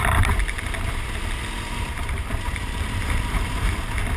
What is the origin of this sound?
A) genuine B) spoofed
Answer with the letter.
B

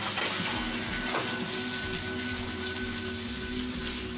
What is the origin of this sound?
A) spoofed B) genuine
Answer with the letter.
B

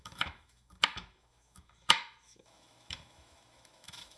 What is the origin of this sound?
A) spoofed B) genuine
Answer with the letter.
A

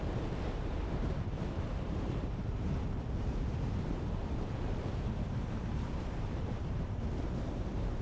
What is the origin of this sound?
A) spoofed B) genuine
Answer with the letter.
A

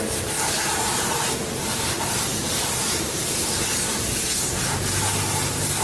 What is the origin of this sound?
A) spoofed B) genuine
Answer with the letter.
A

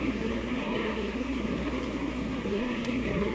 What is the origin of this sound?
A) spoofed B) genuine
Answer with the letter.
A